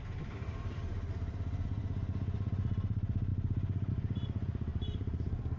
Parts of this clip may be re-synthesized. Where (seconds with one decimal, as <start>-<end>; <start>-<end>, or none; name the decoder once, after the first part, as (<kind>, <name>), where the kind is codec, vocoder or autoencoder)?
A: 0.0-3.3 (vocoder, BigVGAN v2); 3.9-5.6